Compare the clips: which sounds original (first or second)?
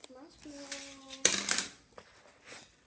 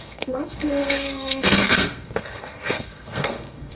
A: first